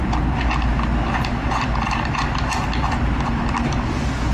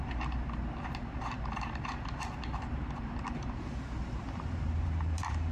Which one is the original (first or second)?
first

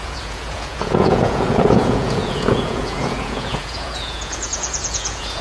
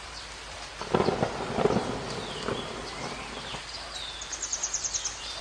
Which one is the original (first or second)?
second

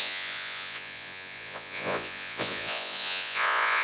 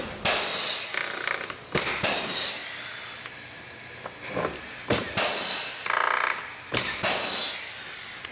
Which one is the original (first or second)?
second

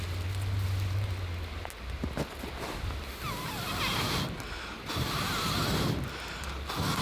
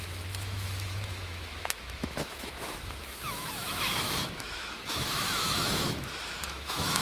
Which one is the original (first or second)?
first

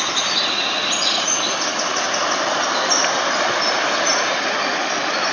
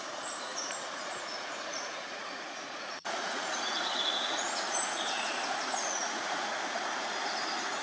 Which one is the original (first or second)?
first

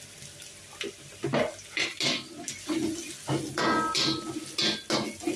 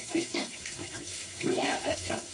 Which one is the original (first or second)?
first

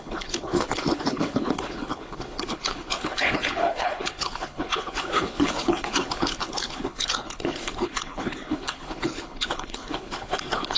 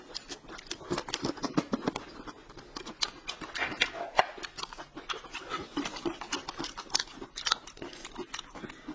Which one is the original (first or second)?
second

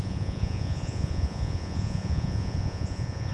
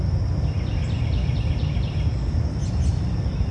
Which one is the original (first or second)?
second